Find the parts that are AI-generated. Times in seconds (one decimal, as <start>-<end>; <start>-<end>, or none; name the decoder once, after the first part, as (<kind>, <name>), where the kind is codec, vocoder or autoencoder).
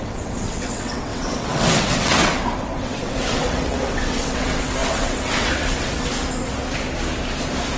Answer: 0.0-6.1 (vocoder, WaveNeXt)